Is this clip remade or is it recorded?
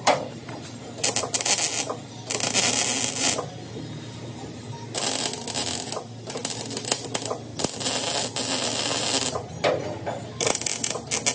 recorded